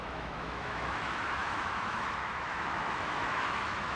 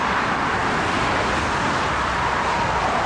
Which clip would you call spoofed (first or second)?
first